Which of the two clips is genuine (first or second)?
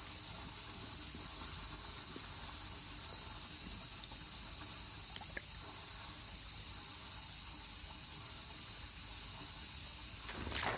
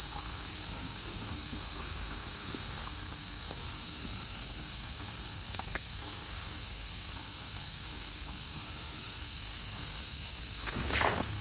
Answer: first